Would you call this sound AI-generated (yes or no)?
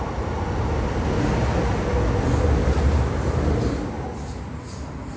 no